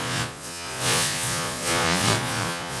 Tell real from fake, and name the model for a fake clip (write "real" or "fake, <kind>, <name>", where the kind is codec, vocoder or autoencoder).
fake, vocoder, Vocos